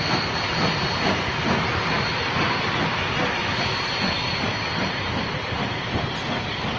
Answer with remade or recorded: recorded